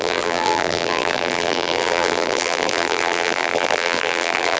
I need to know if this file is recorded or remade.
remade